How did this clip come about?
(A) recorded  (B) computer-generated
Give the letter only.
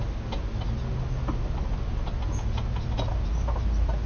A